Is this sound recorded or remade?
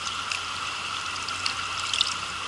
recorded